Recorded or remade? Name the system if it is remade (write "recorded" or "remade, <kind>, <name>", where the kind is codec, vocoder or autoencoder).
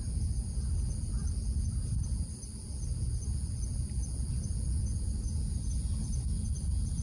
recorded